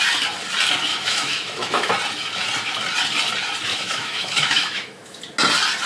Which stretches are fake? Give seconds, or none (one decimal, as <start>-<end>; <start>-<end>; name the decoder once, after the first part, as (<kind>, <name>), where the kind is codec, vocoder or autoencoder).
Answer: 0.9-1.9 (autoencoder, DAC-VAE); 3.7-5.2